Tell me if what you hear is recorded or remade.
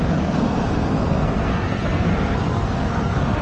remade